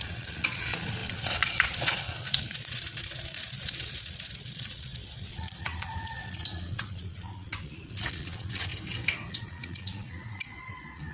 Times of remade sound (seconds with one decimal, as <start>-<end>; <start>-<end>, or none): 0.0-8.7; 9.3-11.1